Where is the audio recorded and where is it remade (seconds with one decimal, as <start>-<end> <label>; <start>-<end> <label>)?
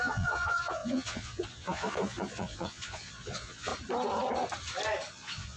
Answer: 0.0-3.7 remade; 3.7-5.1 recorded; 5.1-5.6 remade